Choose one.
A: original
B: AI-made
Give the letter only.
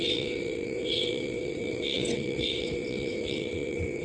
B